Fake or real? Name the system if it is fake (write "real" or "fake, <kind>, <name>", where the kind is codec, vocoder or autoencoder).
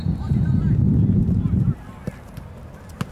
real